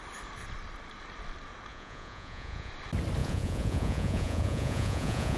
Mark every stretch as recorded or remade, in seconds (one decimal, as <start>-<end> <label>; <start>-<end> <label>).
0.0-1.7 recorded; 1.7-2.7 remade; 2.7-3.2 recorded; 3.2-5.4 remade